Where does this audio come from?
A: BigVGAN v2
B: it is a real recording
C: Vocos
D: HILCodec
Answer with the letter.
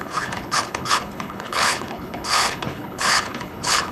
D